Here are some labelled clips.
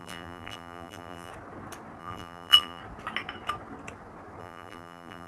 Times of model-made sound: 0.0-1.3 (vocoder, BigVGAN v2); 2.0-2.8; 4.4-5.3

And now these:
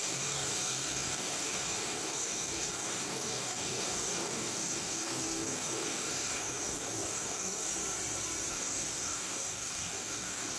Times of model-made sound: 0.0-7.7 (codec, DAC); 8.5-10.6

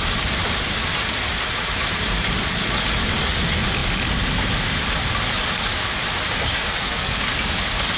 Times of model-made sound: 6.6-7.2 (codec, SNAC)

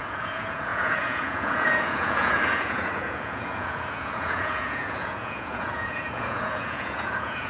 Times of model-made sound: 0.0-7.5 (vocoder, Vocos)